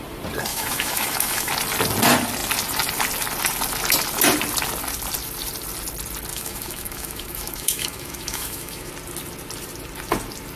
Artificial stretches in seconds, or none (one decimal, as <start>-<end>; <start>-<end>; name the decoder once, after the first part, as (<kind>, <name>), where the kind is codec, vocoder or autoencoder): 0.5-1.5 (autoencoder, DAC-VAE); 6.3-8.9